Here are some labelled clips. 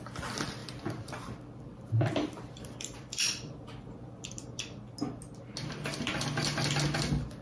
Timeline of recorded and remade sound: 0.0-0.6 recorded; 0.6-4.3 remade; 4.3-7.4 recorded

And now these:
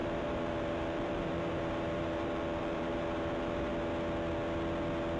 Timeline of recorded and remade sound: 0.0-3.7 remade; 3.7-5.2 recorded

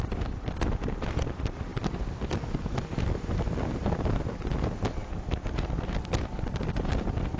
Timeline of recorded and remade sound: 0.0-1.7 remade; 1.7-3.7 recorded; 3.7-5.0 remade; 5.0-6.6 recorded; 6.6-7.4 remade

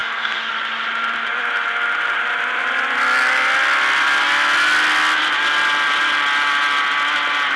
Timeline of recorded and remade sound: 0.0-0.5 remade; 0.5-7.6 recorded

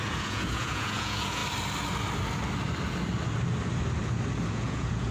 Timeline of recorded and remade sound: 0.0-1.4 remade; 1.4-4.5 recorded; 4.5-5.1 remade

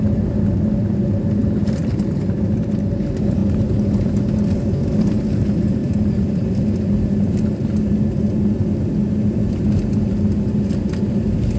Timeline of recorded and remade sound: 0.0-1.4 recorded; 1.4-2.5 remade; 2.5-5.8 recorded; 5.8-7.4 remade; 7.4-11.6 recorded